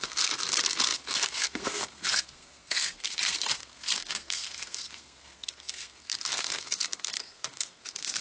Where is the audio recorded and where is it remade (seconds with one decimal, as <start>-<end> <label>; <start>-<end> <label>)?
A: 0.0-8.2 remade